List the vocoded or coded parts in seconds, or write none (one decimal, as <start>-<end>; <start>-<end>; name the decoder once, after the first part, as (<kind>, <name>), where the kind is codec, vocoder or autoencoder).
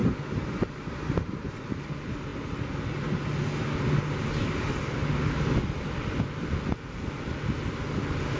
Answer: 0.0-1.7 (vocoder, BigVGAN v2)